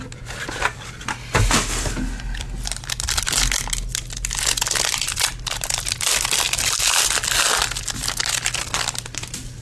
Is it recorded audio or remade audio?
recorded